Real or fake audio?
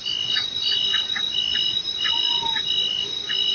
real